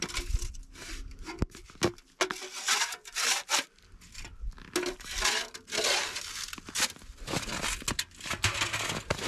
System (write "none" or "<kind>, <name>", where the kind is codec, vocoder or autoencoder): none